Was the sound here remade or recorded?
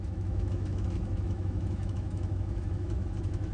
remade